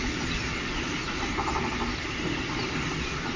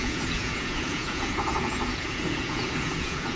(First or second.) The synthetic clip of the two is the second